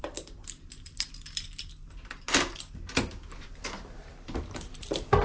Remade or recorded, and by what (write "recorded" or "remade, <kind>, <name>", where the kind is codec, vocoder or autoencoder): recorded